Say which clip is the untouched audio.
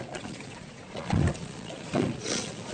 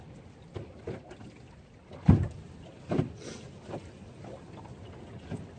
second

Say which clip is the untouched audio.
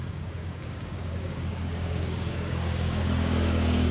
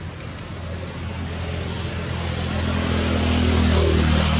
second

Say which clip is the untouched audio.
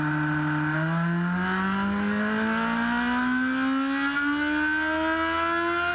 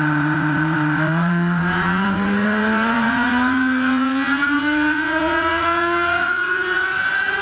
first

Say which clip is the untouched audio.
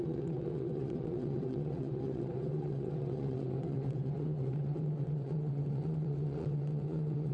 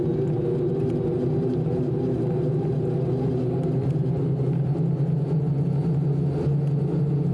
second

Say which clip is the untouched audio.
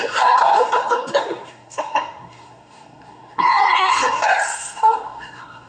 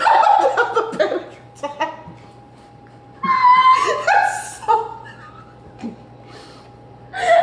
second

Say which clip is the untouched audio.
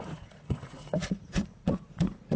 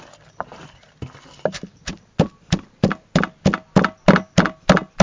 second